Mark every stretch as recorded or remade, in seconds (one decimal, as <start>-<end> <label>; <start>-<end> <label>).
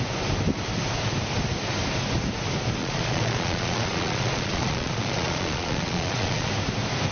0.0-2.8 recorded; 2.8-6.5 remade; 6.5-7.1 recorded